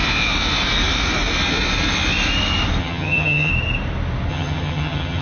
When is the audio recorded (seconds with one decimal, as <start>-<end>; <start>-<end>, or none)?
0.0-2.8; 3.5-4.3

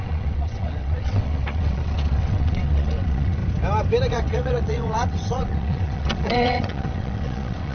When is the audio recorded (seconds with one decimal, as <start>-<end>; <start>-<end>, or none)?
3.4-4.1

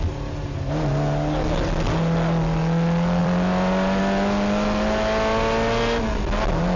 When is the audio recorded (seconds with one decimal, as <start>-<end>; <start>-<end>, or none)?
0.0-3.2; 4.0-6.8

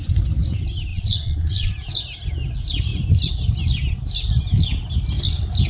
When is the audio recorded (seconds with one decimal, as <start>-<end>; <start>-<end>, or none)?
0.0-0.9; 1.7-5.7

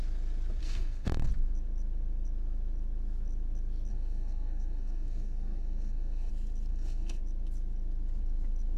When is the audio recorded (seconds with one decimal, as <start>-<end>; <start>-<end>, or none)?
0.0-0.6; 1.3-3.9; 6.3-6.7; 7.2-8.8

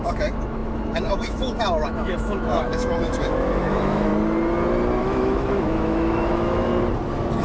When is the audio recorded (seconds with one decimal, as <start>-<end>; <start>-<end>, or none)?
4.1-5.0; 6.7-7.4

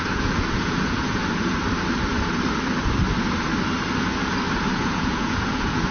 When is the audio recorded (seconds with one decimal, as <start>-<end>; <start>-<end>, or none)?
1.2-4.7